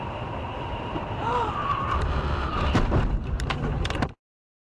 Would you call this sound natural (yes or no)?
no